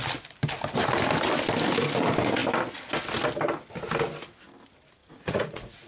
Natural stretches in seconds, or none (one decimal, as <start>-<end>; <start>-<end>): 0.0-5.0